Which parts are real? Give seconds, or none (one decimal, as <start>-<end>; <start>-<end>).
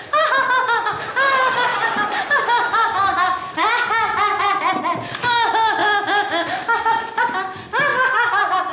0.0-1.7; 4.8-7.9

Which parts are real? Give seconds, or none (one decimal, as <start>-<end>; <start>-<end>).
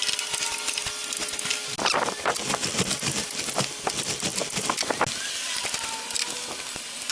0.0-3.2; 3.9-7.1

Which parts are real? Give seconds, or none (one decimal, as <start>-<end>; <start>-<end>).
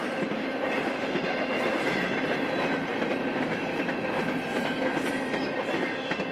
0.0-2.9; 3.9-6.3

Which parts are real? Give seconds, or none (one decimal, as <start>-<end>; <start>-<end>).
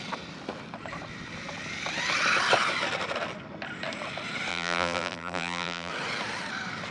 0.0-4.5; 5.9-6.9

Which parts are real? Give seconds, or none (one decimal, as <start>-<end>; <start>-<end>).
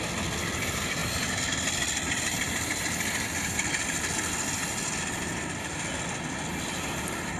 0.0-7.4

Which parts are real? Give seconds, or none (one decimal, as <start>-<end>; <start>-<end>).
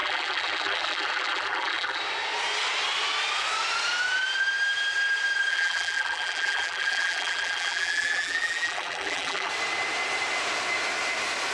2.0-5.5; 9.5-11.5